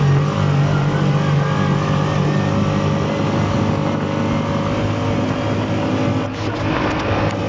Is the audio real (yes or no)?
yes